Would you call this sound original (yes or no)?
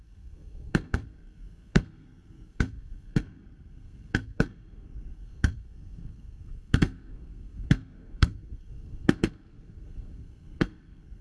no